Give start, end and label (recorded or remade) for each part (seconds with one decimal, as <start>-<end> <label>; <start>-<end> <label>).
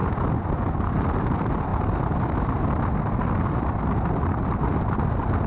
0.0-1.0 recorded; 1.0-5.5 remade